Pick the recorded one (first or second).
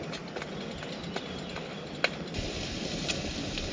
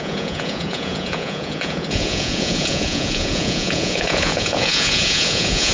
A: first